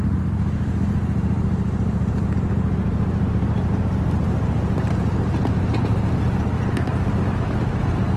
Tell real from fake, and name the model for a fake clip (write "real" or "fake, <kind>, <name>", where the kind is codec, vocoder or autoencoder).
real